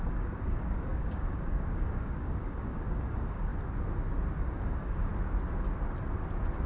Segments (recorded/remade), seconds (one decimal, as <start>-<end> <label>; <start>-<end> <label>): 0.0-3.5 remade; 3.5-4.4 recorded; 4.4-5.1 remade; 5.1-6.7 recorded

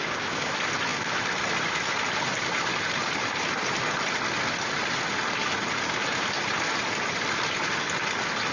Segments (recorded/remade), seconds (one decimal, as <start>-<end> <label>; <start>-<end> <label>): 0.0-0.5 remade; 0.5-8.5 recorded

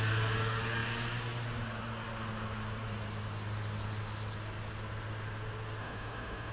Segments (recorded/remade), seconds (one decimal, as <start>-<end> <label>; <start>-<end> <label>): 0.0-5.8 recorded; 5.8-6.5 remade